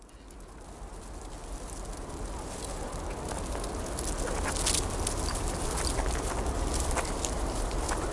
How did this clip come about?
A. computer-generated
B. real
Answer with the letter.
B